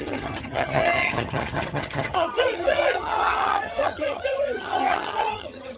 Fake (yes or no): yes